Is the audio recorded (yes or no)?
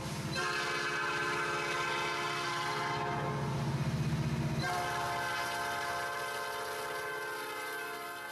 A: yes